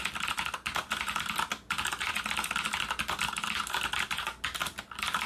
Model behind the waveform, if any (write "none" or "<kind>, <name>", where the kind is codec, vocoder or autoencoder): none